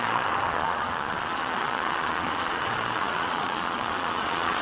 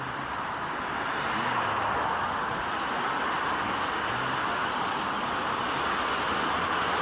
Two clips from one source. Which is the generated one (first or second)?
first